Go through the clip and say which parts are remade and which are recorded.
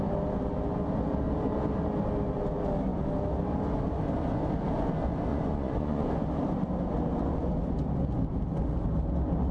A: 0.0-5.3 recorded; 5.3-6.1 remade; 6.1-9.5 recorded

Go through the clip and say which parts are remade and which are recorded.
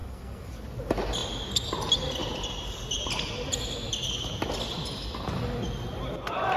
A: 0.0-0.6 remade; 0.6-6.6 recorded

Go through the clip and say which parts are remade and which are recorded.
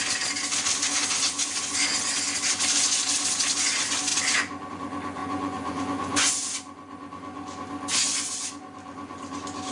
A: 0.0-5.2 recorded; 5.2-6.3 remade; 6.3-9.7 recorded